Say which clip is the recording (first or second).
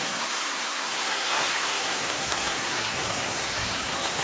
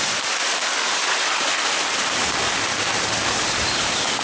second